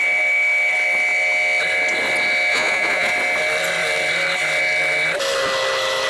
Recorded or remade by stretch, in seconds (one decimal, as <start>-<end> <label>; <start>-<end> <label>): 0.0-2.5 recorded; 2.5-3.1 remade; 3.1-6.1 recorded